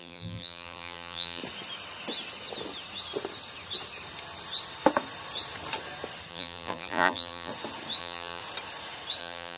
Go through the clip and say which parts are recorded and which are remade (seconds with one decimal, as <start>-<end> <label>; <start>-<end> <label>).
0.0-1.4 remade; 1.4-6.3 recorded; 6.3-7.5 remade; 7.5-8.0 recorded; 8.0-8.4 remade; 8.4-9.2 recorded; 9.2-9.6 remade